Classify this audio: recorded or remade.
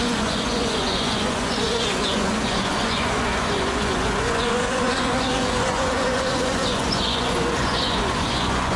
remade